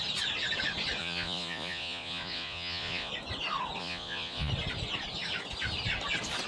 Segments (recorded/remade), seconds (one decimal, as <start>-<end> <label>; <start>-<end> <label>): 0.0-1.0 recorded; 1.0-3.1 remade; 3.1-3.8 recorded; 3.8-4.5 remade; 4.5-6.5 recorded